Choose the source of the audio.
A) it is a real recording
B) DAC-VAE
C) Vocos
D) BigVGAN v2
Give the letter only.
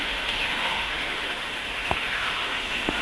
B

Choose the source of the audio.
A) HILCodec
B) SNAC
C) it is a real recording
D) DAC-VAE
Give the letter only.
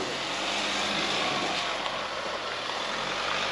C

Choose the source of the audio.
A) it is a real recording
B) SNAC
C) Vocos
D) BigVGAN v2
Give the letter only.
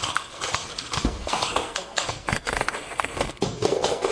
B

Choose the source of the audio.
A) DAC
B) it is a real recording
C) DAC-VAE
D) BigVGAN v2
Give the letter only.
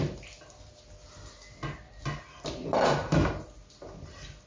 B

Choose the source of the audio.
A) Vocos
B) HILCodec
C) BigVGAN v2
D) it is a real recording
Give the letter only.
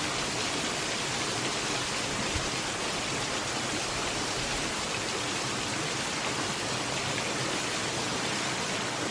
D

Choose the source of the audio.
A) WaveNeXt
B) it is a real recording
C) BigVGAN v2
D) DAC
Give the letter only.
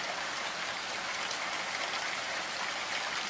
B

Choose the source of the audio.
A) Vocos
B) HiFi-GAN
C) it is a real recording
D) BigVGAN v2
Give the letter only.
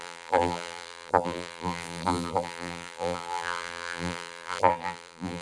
D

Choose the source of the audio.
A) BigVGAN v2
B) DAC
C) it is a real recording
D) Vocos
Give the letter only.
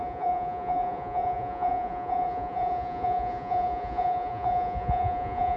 D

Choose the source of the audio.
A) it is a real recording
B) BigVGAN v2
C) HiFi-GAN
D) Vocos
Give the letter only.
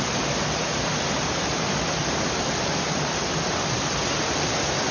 A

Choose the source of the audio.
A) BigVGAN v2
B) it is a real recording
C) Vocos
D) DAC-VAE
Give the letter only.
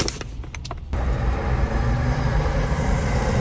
B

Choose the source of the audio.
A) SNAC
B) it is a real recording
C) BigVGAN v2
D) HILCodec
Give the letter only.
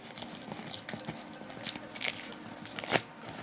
B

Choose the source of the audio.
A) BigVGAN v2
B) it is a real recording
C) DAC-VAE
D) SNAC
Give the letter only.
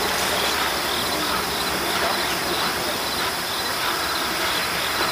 B